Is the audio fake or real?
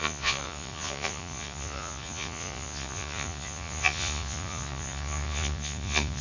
fake